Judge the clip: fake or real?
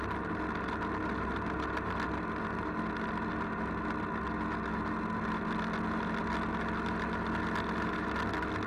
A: real